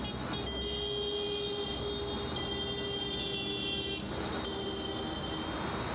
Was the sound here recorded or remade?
recorded